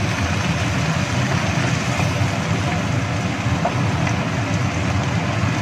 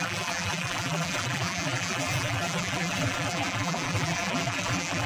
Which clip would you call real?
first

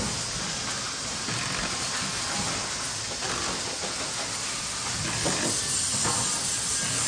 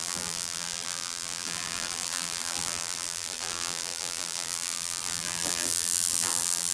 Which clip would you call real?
first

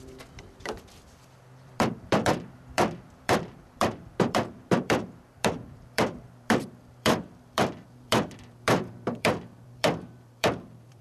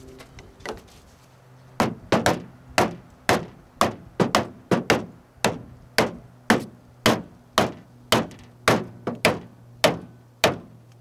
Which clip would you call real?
second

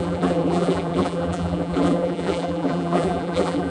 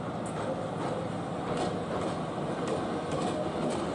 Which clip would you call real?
second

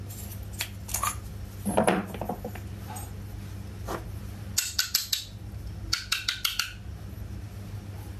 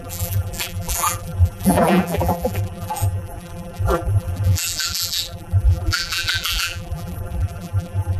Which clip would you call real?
first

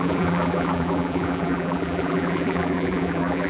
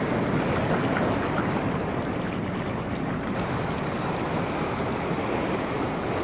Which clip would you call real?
second